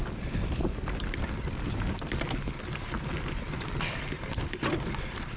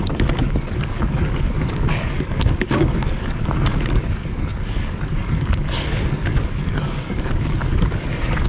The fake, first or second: second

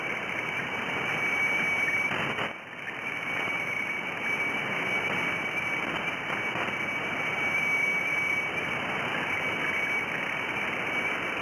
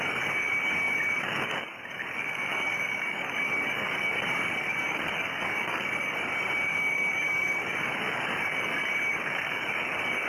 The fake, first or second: second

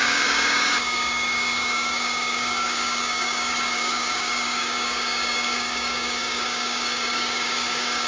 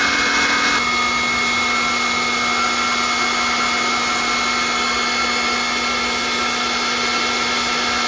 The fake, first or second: first